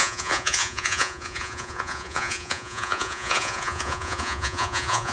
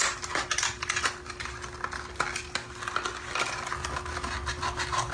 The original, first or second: second